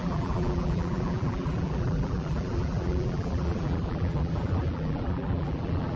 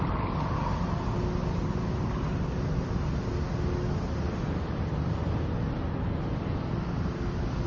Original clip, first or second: second